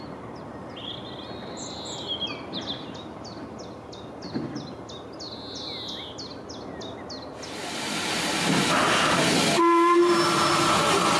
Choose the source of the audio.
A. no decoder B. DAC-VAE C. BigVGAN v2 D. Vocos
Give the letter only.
A